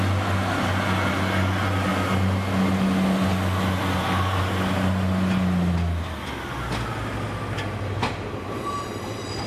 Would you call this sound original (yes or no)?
yes